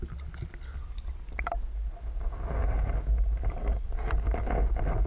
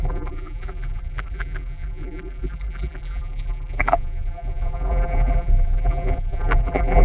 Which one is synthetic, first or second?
second